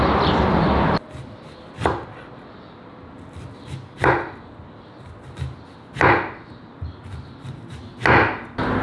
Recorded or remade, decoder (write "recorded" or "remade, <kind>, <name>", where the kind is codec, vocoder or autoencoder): recorded